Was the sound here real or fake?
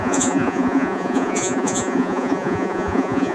fake